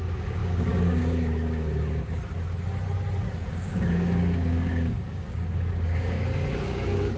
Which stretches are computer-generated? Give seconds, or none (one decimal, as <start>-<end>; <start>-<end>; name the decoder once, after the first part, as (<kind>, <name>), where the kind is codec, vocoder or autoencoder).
0.0-2.2 (codec, DAC); 3.5-7.2